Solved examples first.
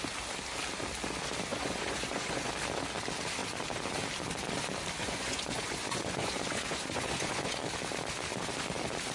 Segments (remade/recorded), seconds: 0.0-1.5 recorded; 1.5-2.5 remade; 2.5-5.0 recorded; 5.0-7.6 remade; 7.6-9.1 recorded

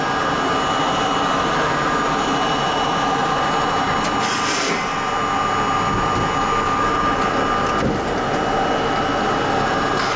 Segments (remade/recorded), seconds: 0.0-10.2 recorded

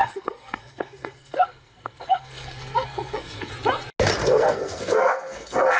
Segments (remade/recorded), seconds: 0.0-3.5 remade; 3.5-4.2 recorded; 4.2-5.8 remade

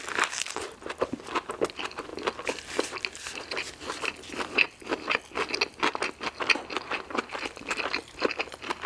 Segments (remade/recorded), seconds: 0.0-8.9 recorded

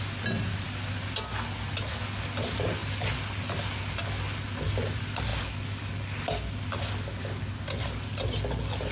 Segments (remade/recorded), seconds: 0.0-8.9 recorded

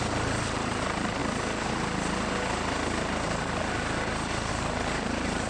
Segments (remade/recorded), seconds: 0.0-1.2 remade; 1.2-4.5 recorded; 4.5-5.5 remade

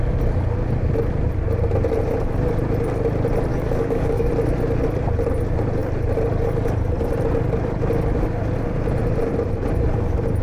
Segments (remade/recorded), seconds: 0.0-3.5 recorded; 3.5-4.3 remade; 4.3-10.4 recorded

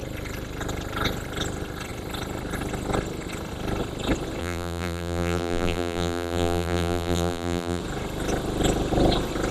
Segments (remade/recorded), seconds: 0.0-4.4 recorded; 4.4-7.8 remade; 7.8-9.5 recorded